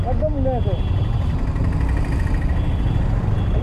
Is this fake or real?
real